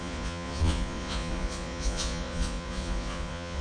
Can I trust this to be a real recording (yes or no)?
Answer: no